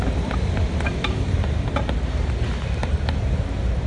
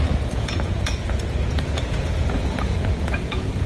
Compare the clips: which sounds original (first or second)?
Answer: first